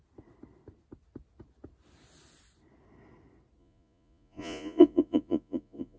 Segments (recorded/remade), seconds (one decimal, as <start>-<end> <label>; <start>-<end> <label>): 0.0-3.6 recorded; 3.6-6.0 remade